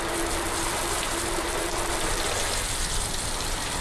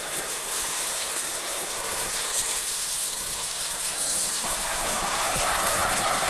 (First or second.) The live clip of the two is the first